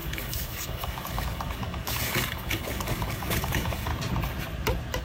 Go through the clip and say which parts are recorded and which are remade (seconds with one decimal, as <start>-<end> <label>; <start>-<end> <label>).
0.0-3.9 remade; 3.9-5.0 recorded